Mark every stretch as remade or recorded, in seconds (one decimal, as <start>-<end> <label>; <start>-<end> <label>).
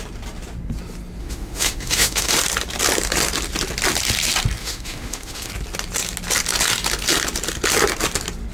0.0-1.2 recorded; 1.2-2.3 remade; 2.3-4.6 recorded; 4.6-5.5 remade; 5.5-8.5 recorded